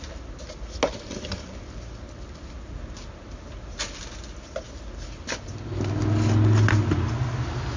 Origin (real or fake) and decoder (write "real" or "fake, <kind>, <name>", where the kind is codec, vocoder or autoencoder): real